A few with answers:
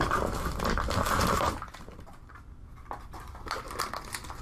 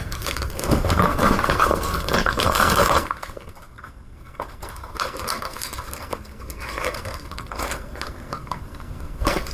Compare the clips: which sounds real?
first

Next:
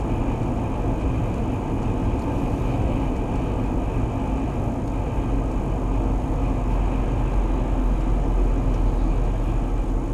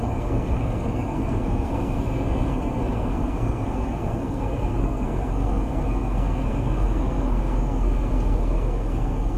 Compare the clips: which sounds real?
first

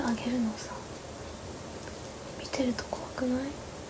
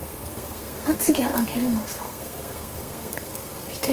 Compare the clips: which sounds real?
first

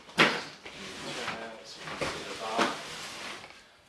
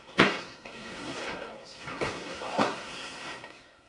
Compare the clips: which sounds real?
first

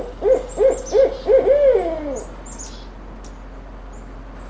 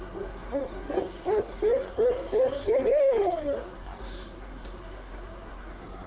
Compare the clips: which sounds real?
first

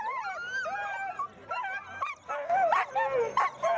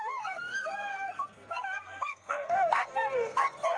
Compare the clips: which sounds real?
first